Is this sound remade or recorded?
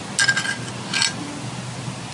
recorded